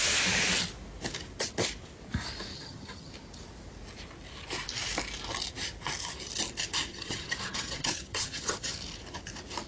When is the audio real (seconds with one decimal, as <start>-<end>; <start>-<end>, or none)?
0.0-2.5; 3.1-6.9; 8.7-9.7